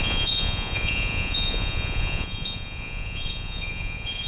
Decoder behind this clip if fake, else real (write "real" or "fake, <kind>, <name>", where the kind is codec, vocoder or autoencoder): fake, vocoder, Vocos